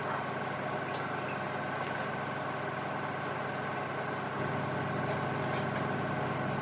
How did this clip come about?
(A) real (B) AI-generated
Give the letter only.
A